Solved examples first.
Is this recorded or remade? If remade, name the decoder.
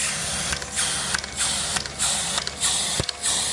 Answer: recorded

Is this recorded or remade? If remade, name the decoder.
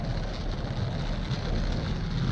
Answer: recorded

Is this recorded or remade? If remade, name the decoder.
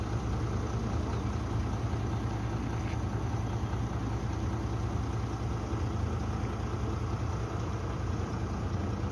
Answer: recorded